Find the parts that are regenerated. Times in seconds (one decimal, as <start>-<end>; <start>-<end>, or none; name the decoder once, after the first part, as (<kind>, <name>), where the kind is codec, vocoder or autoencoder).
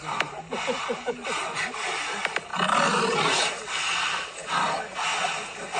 none